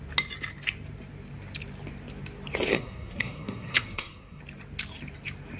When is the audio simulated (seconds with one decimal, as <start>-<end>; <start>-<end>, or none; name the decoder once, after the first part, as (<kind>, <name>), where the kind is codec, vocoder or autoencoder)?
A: 2.7-4.4 (codec, SNAC)